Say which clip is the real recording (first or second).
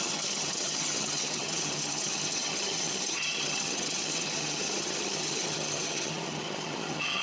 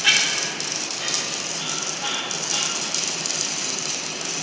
second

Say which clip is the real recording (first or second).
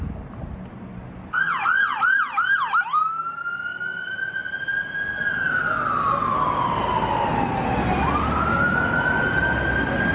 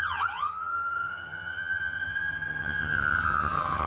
first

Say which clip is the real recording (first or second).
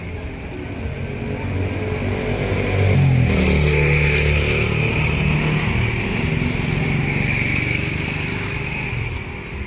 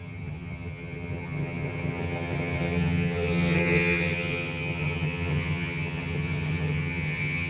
first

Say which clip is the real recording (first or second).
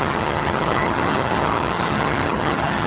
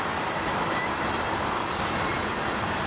second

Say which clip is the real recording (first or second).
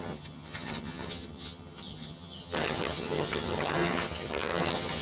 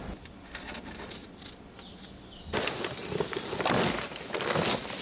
second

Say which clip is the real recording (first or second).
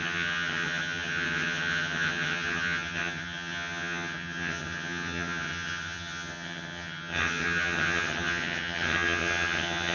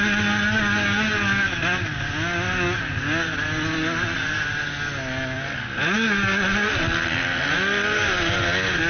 second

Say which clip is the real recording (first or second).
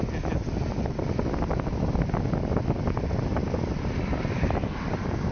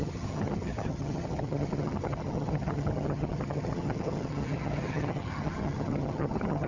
first